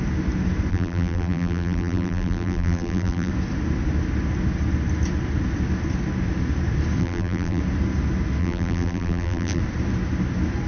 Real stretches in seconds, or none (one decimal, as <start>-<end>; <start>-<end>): 0.0-0.7; 3.3-7.0; 7.6-8.4; 9.6-10.7